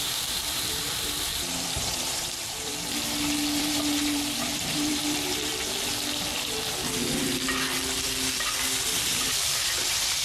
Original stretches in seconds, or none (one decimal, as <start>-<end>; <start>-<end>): 1.3-1.8; 2.7-3.6; 5.5-9.0